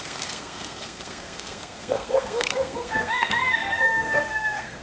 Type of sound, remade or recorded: remade